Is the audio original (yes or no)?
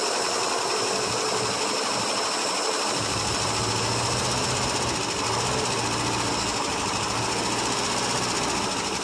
yes